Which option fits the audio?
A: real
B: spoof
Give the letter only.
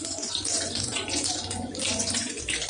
B